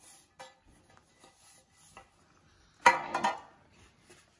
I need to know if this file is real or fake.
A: real